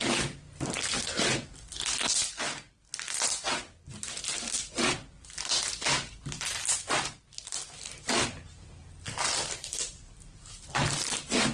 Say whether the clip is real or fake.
real